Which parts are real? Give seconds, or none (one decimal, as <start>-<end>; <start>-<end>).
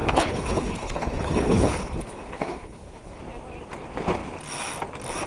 3.2-5.3